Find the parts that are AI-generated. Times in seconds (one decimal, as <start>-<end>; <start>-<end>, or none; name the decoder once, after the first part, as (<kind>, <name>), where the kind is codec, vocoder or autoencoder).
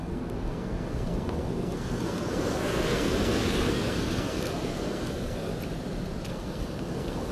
0.0-5.5 (codec, SNAC); 6.3-7.3